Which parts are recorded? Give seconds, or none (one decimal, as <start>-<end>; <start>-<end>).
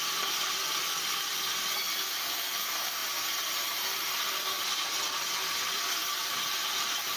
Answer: none